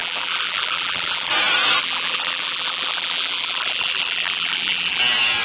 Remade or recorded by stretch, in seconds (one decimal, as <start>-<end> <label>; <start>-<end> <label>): 0.0-1.3 remade; 1.3-1.8 recorded; 1.8-5.0 remade; 5.0-5.4 recorded

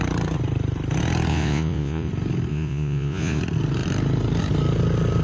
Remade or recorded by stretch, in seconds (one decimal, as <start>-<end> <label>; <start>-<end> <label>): 0.0-1.3 recorded; 1.3-2.1 remade; 2.1-2.5 recorded; 2.5-3.4 remade; 3.4-5.2 recorded

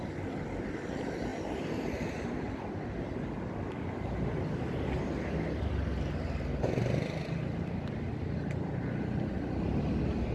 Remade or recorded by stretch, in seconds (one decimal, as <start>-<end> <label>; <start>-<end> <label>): 0.0-10.3 recorded

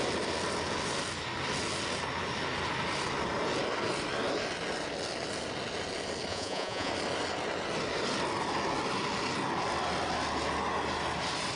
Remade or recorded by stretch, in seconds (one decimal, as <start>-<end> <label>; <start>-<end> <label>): 0.0-6.3 recorded; 6.3-6.9 remade; 6.9-11.6 recorded